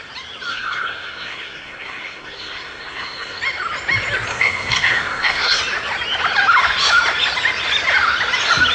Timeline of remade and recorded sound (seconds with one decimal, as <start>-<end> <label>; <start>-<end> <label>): 0.0-0.5 recorded; 0.5-3.4 remade; 3.4-4.3 recorded; 4.3-5.6 remade; 5.6-8.7 recorded